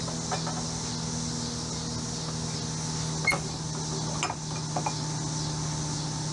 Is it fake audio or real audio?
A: real